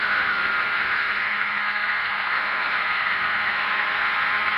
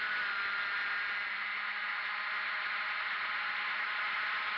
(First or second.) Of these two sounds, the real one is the second